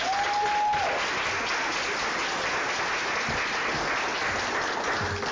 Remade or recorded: recorded